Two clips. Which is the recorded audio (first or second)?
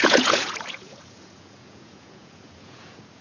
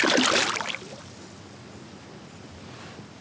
second